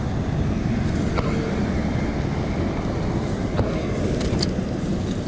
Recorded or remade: recorded